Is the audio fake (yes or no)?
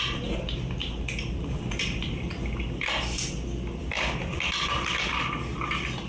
no